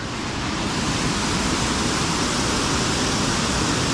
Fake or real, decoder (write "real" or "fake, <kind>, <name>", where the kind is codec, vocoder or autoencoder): real